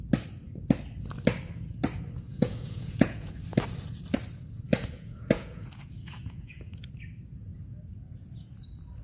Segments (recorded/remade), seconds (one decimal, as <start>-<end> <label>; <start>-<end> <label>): 0.0-2.3 recorded; 2.3-3.3 remade; 3.3-4.7 recorded; 4.7-6.8 remade; 6.8-7.5 recorded; 7.5-8.5 remade; 8.5-9.0 recorded